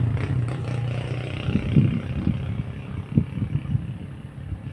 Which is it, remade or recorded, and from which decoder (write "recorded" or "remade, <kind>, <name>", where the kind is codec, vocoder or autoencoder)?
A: recorded